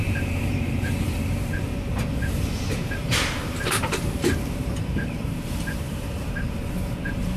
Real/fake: fake